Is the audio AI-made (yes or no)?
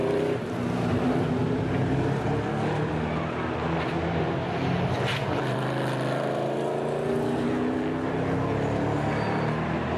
no